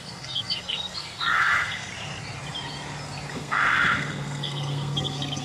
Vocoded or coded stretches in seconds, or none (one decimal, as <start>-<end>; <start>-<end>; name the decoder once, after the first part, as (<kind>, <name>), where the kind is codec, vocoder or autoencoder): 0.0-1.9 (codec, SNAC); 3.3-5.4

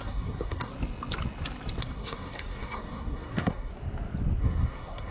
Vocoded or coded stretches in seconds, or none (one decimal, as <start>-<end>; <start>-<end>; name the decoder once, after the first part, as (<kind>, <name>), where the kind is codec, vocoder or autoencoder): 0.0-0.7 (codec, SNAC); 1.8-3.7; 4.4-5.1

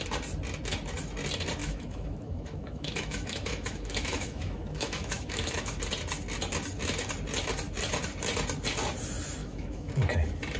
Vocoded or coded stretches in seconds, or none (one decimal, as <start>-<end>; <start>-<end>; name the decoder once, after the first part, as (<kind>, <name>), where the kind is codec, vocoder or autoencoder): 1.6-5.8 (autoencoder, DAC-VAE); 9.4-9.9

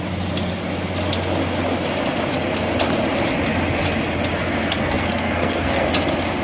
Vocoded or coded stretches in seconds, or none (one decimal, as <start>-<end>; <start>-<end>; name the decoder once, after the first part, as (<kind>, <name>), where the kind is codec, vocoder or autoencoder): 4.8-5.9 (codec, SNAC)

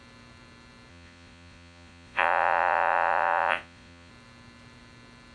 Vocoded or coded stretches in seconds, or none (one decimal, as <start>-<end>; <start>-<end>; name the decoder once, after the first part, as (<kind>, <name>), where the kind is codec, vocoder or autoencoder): 0.9-4.1 (vocoder, Vocos)

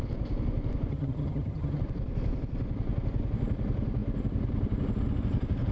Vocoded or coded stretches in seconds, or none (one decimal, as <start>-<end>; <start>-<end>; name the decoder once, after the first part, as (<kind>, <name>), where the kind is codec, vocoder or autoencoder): 0.9-1.8 (vocoder, HiFi-GAN)

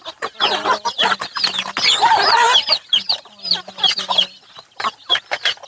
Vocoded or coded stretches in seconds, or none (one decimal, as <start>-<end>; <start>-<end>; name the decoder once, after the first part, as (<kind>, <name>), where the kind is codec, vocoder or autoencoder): none